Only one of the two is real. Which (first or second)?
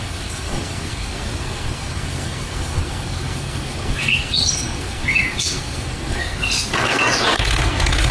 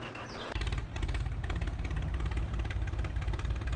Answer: second